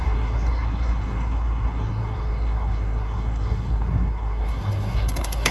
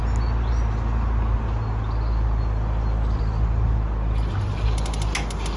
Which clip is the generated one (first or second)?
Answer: first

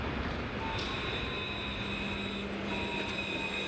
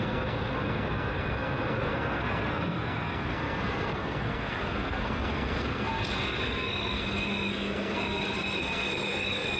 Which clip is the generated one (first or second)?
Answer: second